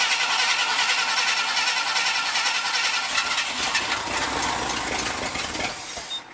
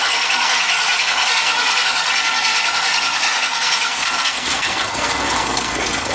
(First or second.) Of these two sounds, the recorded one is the first